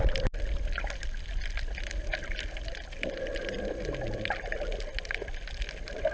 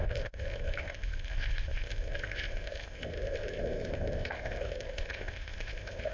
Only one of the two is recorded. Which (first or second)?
first